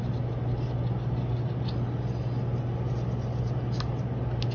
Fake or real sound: real